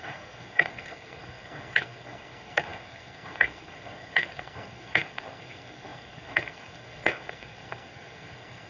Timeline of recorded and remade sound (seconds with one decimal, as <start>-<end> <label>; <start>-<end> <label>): 0.0-8.7 remade